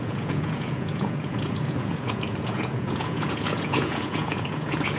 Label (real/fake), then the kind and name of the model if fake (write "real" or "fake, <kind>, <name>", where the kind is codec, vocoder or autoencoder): fake, vocoder, Vocos